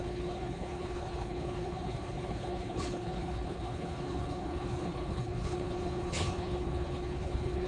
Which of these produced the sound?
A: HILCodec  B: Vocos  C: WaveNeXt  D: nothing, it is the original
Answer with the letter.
A